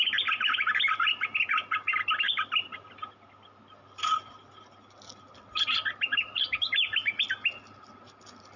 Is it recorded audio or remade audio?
recorded